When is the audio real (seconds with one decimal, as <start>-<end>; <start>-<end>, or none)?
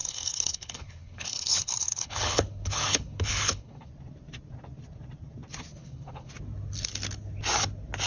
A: 3.9-5.7; 6.3-8.1